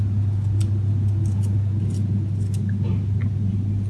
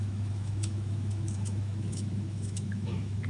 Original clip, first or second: first